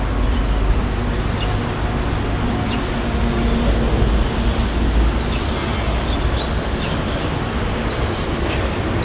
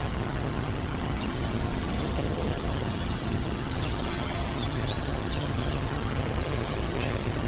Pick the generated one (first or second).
second